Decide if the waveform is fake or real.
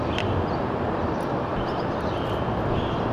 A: real